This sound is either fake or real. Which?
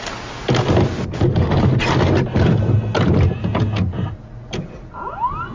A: real